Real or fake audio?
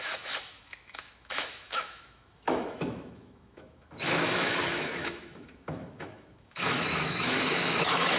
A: fake